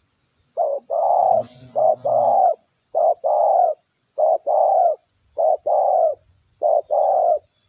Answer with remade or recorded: remade